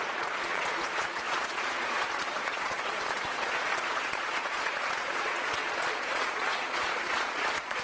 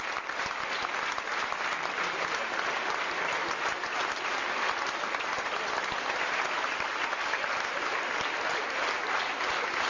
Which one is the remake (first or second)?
first